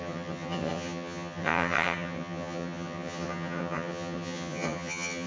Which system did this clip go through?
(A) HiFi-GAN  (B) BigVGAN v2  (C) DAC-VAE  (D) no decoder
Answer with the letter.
A